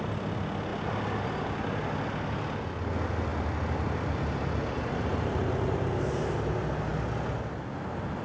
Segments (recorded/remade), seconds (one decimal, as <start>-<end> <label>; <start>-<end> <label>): 0.0-8.2 recorded